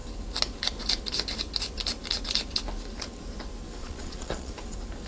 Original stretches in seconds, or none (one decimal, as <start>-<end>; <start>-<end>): 0.0-3.8; 4.5-5.1